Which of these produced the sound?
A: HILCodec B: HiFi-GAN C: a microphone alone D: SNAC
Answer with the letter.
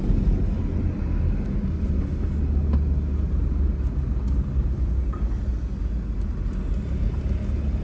C